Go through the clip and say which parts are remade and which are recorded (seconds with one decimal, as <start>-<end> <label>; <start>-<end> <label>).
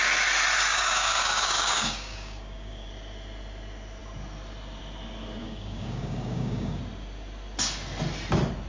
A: 0.0-0.7 recorded; 0.7-2.9 remade; 2.9-5.4 recorded; 5.4-6.8 remade; 6.8-8.7 recorded